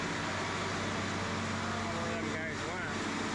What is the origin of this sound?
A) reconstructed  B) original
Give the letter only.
B